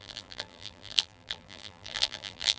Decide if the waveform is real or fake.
fake